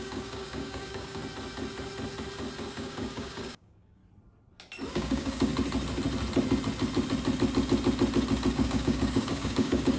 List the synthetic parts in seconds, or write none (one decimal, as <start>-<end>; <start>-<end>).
0.0-1.2; 2.7-4.0; 4.9-5.5; 8.5-10.0